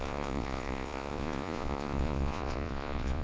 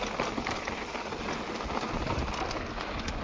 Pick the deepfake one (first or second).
first